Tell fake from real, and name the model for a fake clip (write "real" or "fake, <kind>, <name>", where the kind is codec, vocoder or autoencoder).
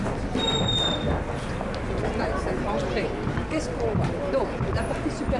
real